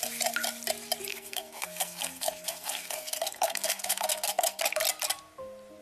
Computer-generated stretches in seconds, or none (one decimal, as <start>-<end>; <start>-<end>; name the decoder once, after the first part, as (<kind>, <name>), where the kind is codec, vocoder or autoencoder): 1.1-4.6 (codec, SNAC)